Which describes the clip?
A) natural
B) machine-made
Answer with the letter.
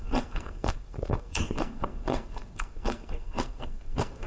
B